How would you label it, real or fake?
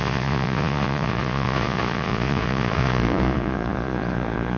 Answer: fake